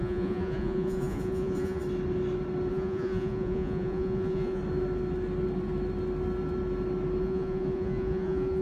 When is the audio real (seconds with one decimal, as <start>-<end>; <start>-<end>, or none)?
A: 1.8-2.7; 4.6-7.2